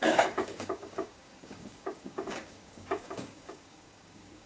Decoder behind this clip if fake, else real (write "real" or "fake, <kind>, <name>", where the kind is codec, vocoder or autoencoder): fake, codec, DAC